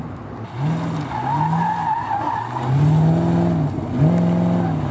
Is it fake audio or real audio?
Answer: real